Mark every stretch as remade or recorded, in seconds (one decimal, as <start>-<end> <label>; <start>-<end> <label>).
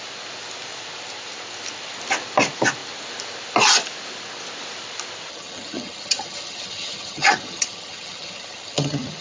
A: 0.0-5.3 recorded; 5.3-9.2 remade